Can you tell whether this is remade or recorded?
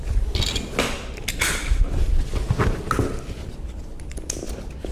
recorded